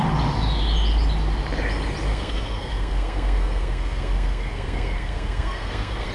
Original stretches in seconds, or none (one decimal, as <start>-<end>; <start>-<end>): 0.0-2.1